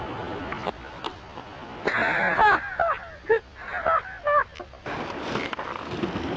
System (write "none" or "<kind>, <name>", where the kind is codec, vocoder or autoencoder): none